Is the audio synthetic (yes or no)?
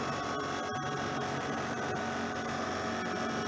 no